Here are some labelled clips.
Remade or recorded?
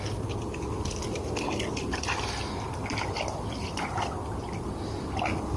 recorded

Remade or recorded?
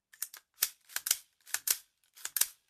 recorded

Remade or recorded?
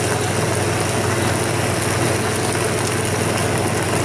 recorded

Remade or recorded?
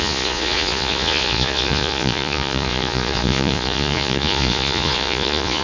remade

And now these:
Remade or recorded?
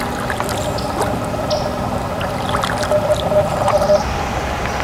recorded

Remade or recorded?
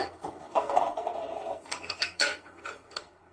remade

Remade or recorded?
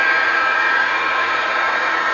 remade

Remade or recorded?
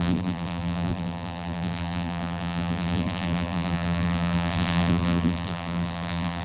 remade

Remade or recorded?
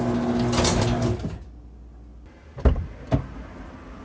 recorded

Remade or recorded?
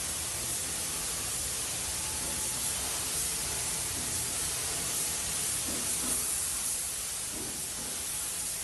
recorded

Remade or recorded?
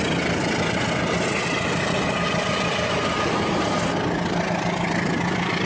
recorded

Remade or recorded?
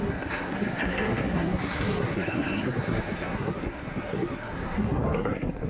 remade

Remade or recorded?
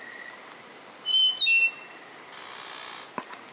recorded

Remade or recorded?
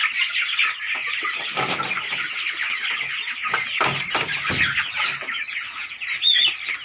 recorded